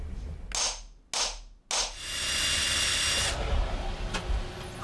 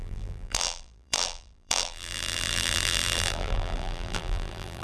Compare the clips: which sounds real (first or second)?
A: first